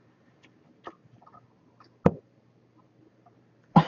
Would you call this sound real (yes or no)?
yes